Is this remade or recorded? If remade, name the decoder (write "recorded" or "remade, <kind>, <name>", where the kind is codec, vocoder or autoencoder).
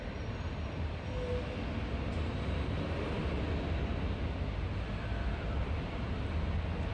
recorded